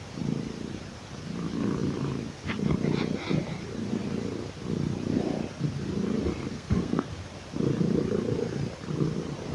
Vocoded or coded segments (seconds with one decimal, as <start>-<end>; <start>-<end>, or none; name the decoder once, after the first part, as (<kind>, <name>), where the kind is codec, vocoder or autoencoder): 6.5-7.1 (codec, SNAC)

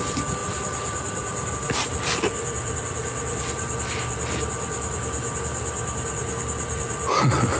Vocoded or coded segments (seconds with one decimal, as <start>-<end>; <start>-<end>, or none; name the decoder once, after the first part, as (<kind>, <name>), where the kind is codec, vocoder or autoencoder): 0.4-1.5 (vocoder, BigVGAN v2)

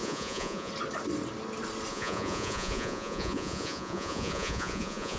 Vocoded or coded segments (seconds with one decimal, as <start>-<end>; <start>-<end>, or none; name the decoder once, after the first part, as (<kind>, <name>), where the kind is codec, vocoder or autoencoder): 0.0-0.7 (vocoder, Vocos); 1.9-5.2

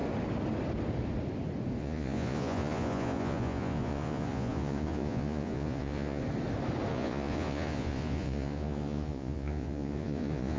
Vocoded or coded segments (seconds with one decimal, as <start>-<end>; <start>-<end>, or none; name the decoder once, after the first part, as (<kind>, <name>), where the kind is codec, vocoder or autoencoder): 1.8-6.2 (vocoder, Vocos); 6.9-10.6

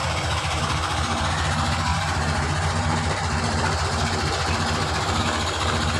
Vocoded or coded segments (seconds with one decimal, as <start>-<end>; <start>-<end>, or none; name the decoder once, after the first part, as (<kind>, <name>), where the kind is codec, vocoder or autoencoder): 0.0-0.6 (vocoder, BigVGAN v2); 1.9-5.2

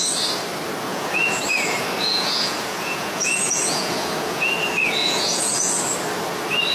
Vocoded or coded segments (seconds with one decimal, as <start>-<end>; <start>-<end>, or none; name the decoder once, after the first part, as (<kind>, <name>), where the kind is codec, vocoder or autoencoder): 0.9-1.4 (vocoder, Vocos); 2.0-4.5; 5.0-5.8

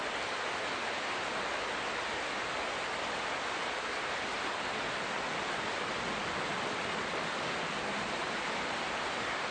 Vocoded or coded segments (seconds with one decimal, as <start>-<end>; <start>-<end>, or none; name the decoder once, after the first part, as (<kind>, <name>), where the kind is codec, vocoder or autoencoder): none

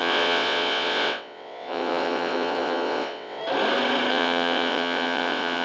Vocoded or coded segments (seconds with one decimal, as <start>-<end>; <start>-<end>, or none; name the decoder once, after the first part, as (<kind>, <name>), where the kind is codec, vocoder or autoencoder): 0.0-3.4 (vocoder, WaveNeXt); 4.1-5.6